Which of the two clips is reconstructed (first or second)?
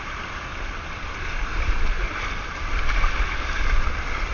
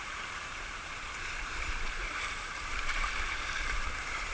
second